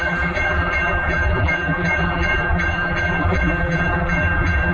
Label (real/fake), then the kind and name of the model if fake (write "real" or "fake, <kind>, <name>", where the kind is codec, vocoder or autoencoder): fake, vocoder, BigVGAN v2